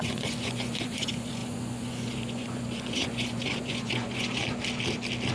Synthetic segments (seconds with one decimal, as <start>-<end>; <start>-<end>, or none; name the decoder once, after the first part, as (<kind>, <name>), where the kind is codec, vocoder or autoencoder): 0.0-4.4 (vocoder, Vocos)